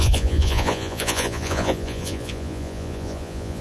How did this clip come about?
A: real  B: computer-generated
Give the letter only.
B